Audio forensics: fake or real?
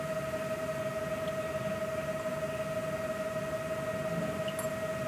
real